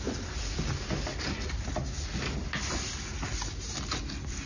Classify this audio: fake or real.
real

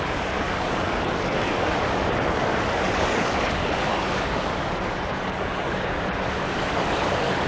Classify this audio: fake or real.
fake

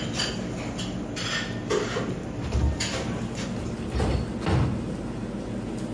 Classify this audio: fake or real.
real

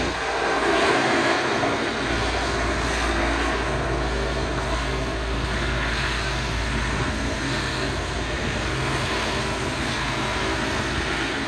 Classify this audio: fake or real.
fake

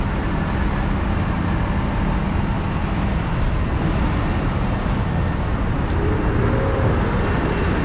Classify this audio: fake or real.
real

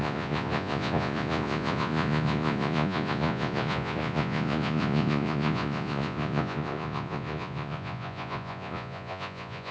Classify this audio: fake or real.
fake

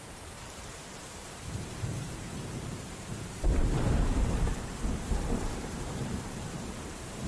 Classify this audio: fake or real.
fake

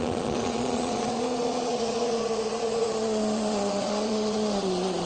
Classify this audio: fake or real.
fake